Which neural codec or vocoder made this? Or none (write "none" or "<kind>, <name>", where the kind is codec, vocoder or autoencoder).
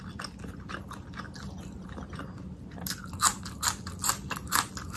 none